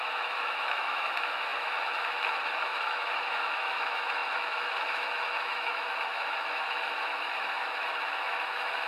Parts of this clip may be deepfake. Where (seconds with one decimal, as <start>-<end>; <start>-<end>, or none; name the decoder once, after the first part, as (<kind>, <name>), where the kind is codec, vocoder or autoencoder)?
0.0-8.9 (autoencoder, DAC-VAE)